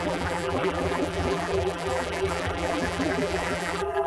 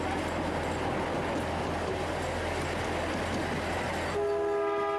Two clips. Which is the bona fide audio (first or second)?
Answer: second